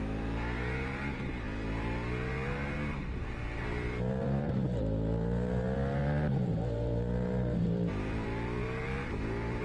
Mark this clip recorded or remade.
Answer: remade